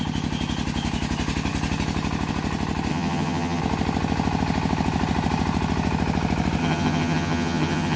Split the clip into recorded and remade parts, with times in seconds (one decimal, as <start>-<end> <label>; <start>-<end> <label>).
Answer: 0.0-2.9 recorded; 2.9-3.6 remade; 3.6-6.6 recorded; 6.6-8.0 remade